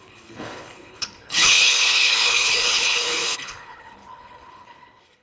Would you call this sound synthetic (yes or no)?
yes